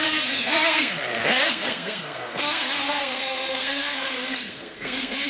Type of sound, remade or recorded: remade